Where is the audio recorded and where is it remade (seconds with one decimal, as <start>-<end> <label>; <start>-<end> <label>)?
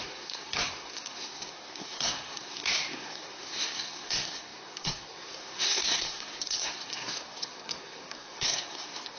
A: 0.0-9.2 remade